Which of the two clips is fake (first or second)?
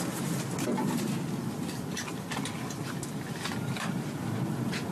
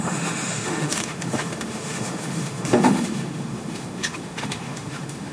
second